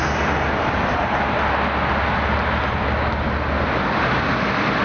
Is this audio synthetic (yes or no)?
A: no